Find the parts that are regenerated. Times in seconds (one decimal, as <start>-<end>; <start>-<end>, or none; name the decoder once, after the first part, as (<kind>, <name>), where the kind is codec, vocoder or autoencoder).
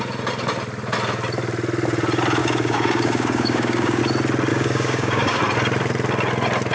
2.4-4.0 (codec, DAC); 4.5-5.4